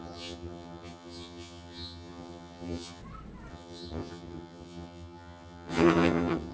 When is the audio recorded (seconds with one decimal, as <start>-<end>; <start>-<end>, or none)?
3.0-3.5